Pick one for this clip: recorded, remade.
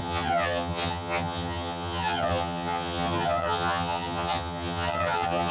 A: remade